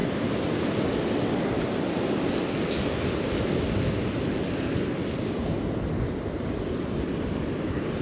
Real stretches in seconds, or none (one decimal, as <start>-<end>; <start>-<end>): 0.0-8.0